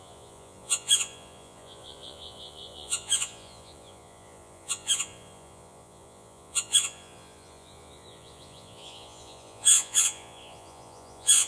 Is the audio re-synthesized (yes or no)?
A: yes